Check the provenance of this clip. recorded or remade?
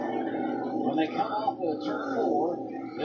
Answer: recorded